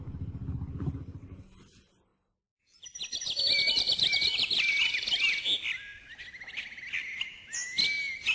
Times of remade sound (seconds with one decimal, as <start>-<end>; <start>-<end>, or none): 2.1-5.4